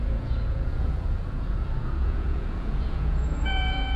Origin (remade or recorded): remade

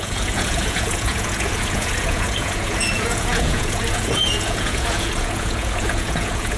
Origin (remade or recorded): remade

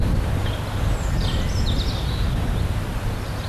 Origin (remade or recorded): recorded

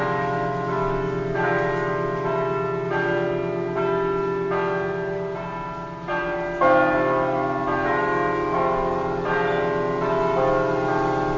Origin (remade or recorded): recorded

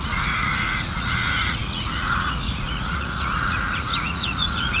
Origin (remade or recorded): remade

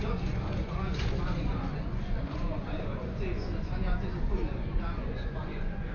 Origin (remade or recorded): remade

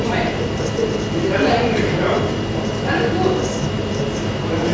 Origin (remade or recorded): recorded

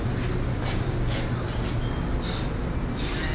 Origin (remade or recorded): recorded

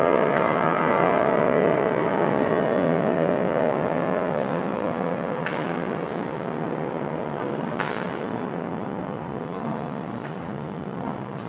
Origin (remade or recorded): remade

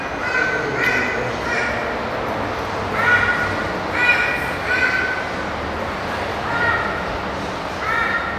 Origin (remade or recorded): recorded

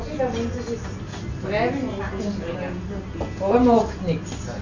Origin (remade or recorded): recorded